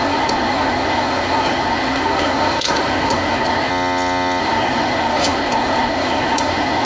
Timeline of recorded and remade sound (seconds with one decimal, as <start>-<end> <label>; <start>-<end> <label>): 0.0-3.7 remade; 3.7-4.4 recorded; 4.4-6.9 remade